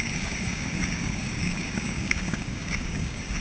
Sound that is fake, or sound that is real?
fake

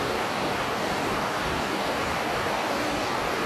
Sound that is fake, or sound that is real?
fake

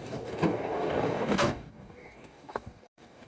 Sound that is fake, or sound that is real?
fake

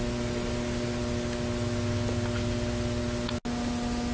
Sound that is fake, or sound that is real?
real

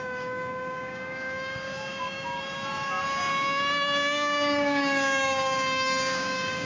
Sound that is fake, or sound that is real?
fake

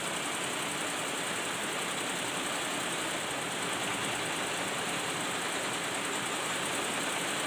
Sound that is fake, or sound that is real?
real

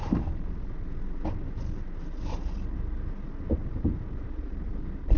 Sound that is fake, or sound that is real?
real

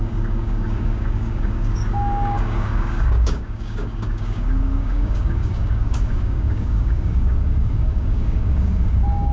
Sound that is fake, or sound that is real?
fake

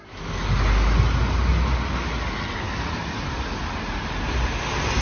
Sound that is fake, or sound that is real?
real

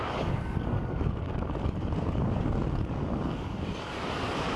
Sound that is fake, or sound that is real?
fake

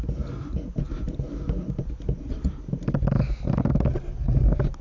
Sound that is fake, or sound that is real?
real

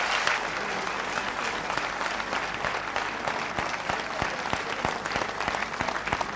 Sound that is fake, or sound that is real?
real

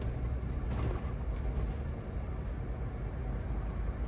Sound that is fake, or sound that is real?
real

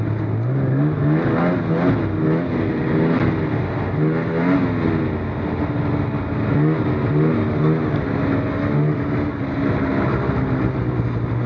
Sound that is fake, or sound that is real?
real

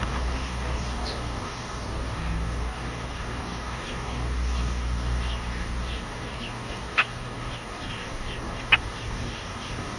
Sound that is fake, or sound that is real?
fake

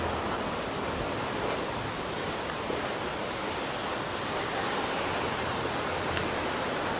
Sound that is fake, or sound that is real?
real